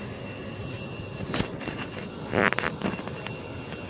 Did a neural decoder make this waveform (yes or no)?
no